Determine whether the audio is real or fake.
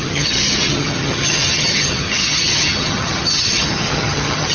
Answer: fake